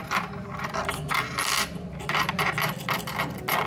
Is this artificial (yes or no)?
no